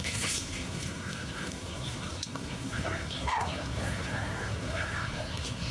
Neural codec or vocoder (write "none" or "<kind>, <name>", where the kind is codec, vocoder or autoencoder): codec, SNAC